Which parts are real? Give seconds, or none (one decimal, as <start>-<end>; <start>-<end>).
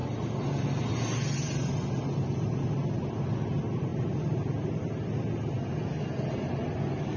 0.0-7.2